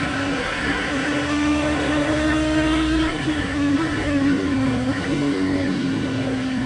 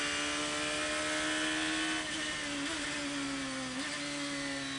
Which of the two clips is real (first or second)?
second